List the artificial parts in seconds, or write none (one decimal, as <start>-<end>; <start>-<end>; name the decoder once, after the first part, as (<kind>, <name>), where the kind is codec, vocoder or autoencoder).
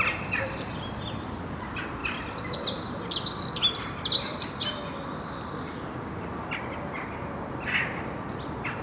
none